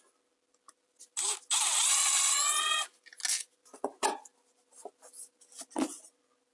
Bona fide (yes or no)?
yes